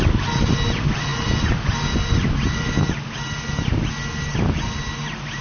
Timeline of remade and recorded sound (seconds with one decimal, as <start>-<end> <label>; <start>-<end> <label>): 0.0-5.4 recorded